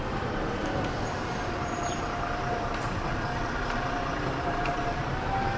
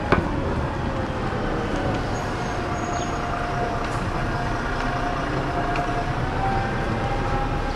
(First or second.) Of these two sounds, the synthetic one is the first